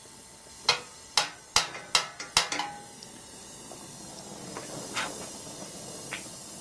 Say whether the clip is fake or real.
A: real